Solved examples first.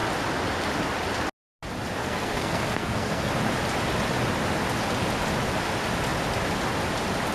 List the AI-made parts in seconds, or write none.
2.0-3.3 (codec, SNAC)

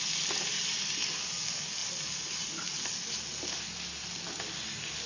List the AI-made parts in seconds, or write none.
none

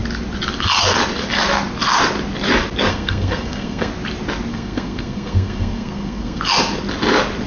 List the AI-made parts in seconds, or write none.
2.9-3.9 (codec, SNAC); 4.5-6.4

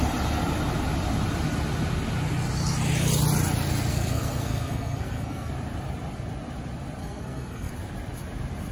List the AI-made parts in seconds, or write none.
3.9-5.5 (codec, SNAC); 7.0-7.7

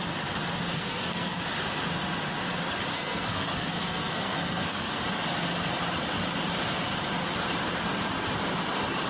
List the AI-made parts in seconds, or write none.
0.7-1.4 (codec, SNAC); 2.9-5.0

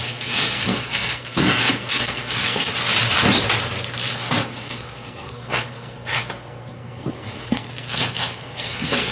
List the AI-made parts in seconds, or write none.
0.0-2.7 (codec, SNAC); 4.1-9.1

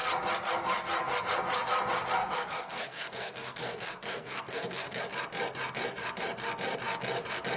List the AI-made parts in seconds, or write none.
2.2-5.0 (codec, SNAC)

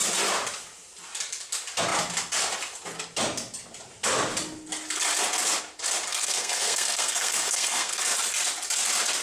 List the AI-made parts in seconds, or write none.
6.1-8.0 (codec, SNAC)